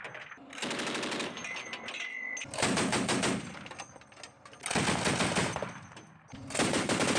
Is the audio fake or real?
real